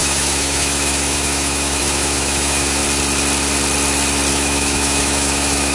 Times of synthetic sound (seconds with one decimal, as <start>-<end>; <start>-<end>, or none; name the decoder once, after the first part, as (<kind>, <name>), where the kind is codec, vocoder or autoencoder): 0.0-2.8 (autoencoder, DAC-VAE); 4.3-5.7